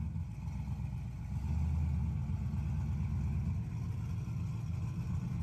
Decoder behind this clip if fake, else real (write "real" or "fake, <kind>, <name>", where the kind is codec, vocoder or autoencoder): real